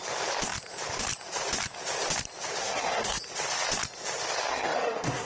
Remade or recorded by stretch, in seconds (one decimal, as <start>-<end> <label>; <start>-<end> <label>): 0.0-2.6 recorded; 2.6-3.2 remade; 3.2-4.5 recorded; 4.5-5.3 remade

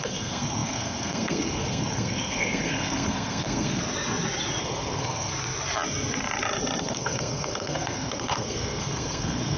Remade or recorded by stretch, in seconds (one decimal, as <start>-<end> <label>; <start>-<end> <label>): 0.0-3.8 remade; 3.8-4.6 recorded; 4.6-5.3 remade; 5.3-6.8 recorded; 6.8-9.6 remade

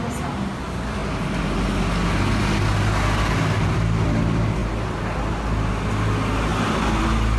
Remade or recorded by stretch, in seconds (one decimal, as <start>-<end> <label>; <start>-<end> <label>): 0.0-7.4 recorded

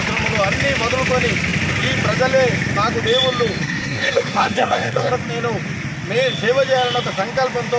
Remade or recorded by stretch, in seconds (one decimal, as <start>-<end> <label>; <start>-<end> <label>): 0.0-3.6 recorded; 3.6-5.1 remade; 5.1-7.8 recorded

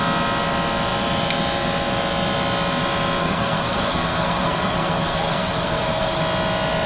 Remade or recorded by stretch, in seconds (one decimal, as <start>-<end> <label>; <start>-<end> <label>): 0.0-3.2 recorded; 3.2-6.2 remade; 6.2-6.9 recorded

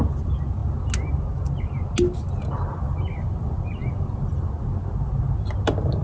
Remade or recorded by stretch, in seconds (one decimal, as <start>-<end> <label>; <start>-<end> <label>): 0.0-6.0 recorded

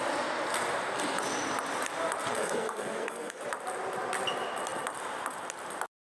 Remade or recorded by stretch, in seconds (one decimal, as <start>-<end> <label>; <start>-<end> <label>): 0.0-2.3 recorded; 2.3-3.4 remade; 3.4-6.1 recorded

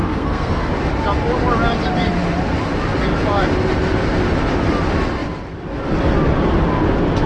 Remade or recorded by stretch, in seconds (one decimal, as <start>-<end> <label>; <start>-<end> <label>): 0.0-0.7 remade; 0.7-7.3 recorded